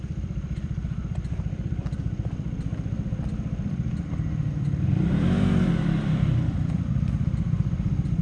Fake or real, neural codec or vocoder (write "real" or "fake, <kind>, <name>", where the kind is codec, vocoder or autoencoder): fake, vocoder, BigVGAN v2